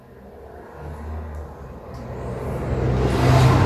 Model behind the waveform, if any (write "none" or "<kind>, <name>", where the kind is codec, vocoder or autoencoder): none